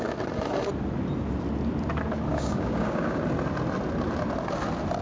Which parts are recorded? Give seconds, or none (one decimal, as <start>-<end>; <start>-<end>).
0.0-2.3; 3.2-5.0